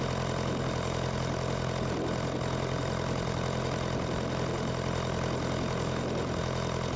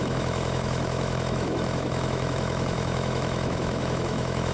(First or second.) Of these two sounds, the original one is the first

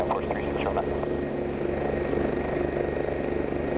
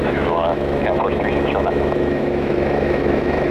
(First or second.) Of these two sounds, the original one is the first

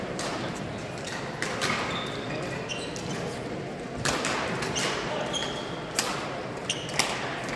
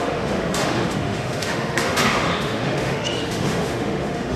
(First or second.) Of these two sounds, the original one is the first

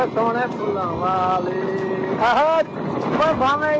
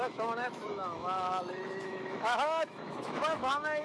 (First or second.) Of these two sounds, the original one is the first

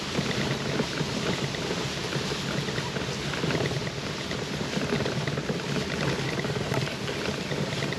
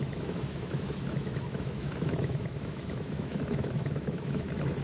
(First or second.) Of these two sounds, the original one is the first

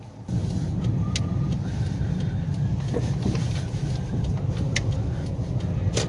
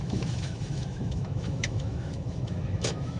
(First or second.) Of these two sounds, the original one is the first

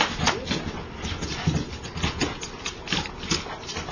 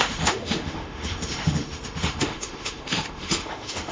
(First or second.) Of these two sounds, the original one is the first